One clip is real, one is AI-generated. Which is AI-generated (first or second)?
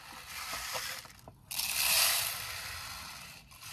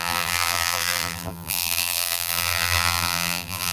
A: second